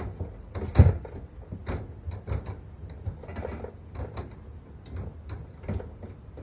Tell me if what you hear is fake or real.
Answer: real